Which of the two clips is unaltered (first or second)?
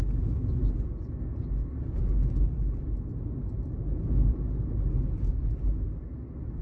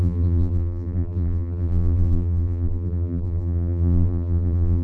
first